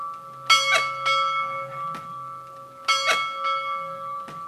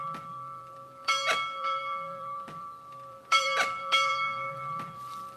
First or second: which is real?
first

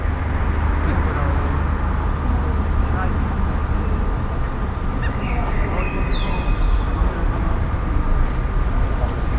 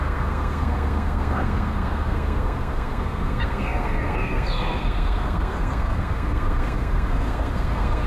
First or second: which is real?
first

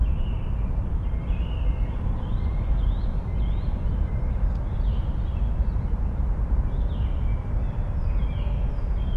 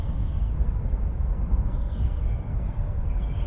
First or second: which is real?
first